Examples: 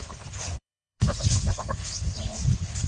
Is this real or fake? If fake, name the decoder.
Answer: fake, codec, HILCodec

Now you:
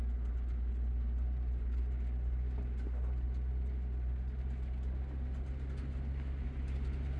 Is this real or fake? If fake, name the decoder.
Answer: real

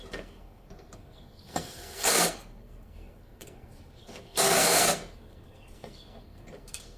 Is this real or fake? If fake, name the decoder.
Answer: fake, codec, SNAC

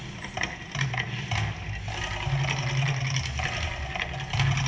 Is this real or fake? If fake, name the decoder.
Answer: real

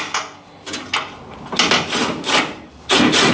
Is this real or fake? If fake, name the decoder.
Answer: real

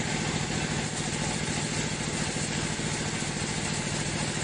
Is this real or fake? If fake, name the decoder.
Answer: real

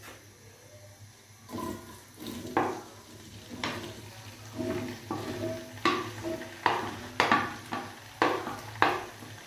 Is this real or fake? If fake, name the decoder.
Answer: real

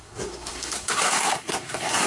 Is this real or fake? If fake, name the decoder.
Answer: fake, codec, SNAC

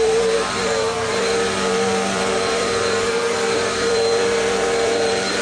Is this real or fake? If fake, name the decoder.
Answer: fake, vocoder, BigVGAN v2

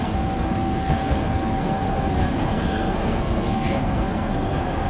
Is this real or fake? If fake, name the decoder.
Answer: fake, codec, SNAC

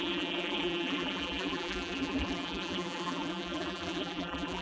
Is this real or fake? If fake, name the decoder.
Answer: fake, vocoder, BigVGAN v2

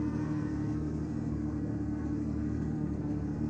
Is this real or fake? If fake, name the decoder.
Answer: fake, codec, SNAC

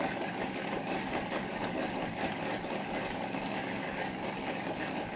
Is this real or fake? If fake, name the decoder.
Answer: fake, codec, DAC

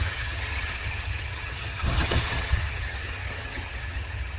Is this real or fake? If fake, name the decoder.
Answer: fake, vocoder, HiFi-GAN